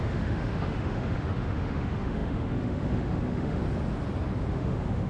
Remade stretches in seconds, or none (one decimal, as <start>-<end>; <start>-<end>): 0.0-3.6; 4.5-5.1